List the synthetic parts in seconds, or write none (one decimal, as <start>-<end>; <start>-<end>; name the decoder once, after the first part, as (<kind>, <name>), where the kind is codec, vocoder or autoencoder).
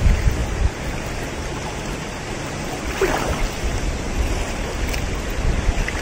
0.0-6.0 (vocoder, BigVGAN v2)